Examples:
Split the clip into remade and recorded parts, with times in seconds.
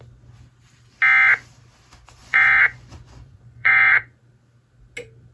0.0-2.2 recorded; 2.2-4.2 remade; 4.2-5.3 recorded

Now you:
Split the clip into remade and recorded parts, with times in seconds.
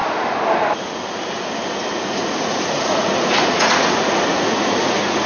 0.0-1.9 recorded; 1.9-5.3 remade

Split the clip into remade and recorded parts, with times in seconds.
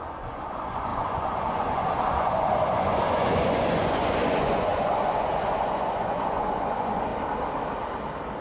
0.0-7.1 remade; 7.1-8.4 recorded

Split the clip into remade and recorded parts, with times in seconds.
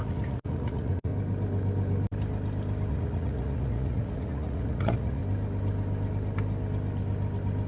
0.0-1.1 remade; 1.1-2.9 recorded; 2.9-5.2 remade; 5.2-7.7 recorded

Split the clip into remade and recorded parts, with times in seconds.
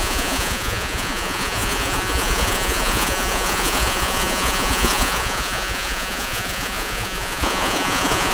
0.0-8.3 remade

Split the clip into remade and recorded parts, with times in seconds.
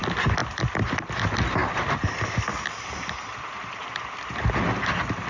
0.0-5.3 recorded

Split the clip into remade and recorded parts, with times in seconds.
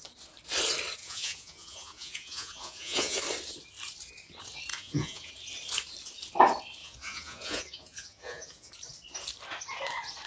0.0-1.0 recorded; 1.0-3.2 remade; 3.2-4.7 recorded; 4.7-5.3 remade; 5.3-6.8 recorded; 6.8-8.7 remade; 8.7-10.3 recorded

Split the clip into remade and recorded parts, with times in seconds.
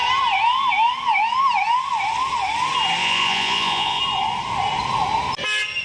0.0-3.0 recorded; 3.0-4.0 remade; 4.0-5.8 recorded